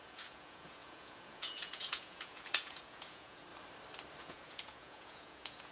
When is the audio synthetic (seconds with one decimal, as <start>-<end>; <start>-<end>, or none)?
0.0-3.5; 4.2-5.7